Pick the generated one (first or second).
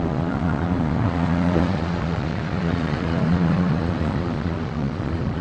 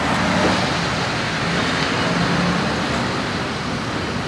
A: first